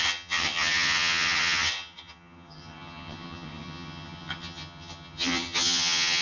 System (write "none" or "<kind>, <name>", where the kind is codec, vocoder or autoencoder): vocoder, HiFi-GAN